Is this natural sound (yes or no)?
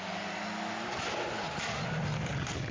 yes